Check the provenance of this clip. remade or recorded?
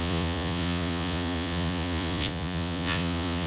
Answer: remade